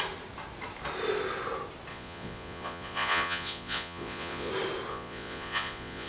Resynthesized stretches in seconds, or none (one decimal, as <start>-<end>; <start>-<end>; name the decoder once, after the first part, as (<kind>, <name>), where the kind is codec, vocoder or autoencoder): 1.9-4.5 (vocoder, Vocos); 4.9-6.1